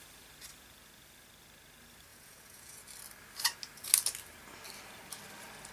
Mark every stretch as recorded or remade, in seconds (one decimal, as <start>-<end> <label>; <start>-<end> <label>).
0.0-2.1 recorded; 2.1-2.8 remade; 2.8-5.7 recorded